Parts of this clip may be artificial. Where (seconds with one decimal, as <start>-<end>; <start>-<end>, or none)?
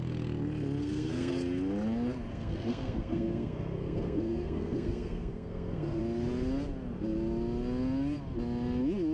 0.8-1.3; 2.3-6.0